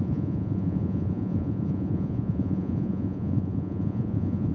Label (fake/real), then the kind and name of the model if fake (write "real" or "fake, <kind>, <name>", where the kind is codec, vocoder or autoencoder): fake, vocoder, Vocos